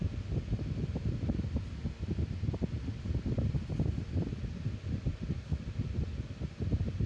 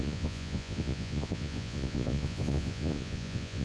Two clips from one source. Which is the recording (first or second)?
first